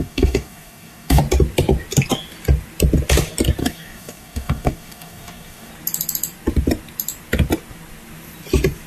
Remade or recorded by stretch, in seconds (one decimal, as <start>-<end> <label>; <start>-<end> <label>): 0.0-1.2 remade; 1.2-3.6 recorded; 3.6-5.7 remade; 5.7-8.9 recorded